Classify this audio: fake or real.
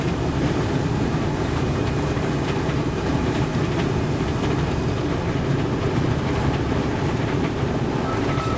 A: fake